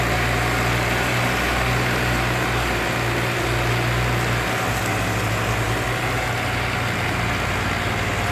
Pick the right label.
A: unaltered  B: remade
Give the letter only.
A